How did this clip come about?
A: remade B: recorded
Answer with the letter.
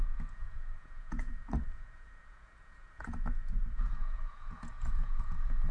A